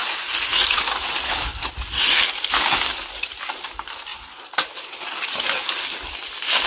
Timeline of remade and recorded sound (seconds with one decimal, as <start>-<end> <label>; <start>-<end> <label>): 0.0-6.7 recorded